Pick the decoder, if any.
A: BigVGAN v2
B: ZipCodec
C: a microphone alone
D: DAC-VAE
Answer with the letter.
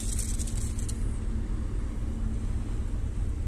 C